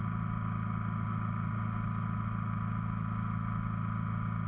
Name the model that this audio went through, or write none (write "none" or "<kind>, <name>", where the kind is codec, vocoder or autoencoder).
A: none